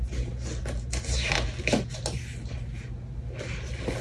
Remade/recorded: recorded